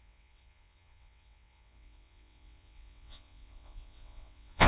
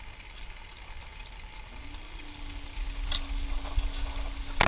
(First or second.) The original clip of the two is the second